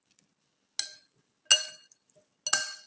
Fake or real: real